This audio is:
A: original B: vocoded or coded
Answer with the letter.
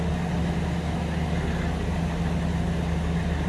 A